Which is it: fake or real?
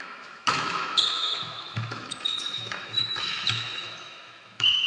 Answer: fake